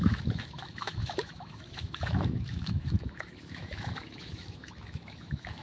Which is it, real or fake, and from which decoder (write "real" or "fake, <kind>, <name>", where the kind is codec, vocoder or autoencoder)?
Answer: fake, autoencoder, DAC-VAE